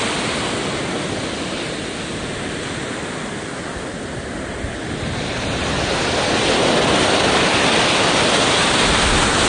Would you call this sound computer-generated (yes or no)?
no